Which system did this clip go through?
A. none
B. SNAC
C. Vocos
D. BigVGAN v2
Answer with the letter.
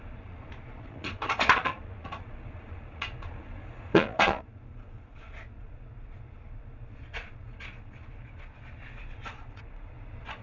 C